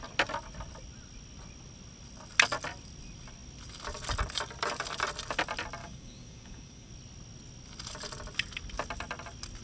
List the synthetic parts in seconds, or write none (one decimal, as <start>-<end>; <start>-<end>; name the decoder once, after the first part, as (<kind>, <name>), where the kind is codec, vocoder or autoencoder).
5.8-6.9 (codec, DAC)